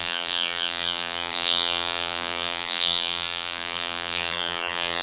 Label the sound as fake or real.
fake